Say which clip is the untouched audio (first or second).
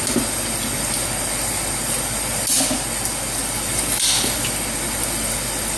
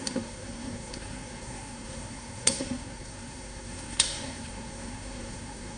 first